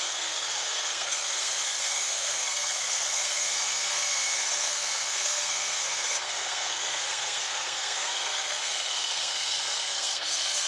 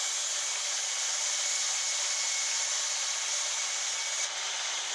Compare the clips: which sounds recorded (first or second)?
second